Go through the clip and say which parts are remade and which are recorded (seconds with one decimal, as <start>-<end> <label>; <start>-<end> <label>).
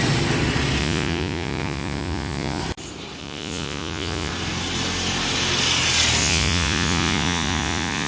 0.0-0.8 recorded; 0.8-2.6 remade; 2.6-3.2 recorded; 3.2-4.3 remade; 4.3-6.2 recorded; 6.2-8.1 remade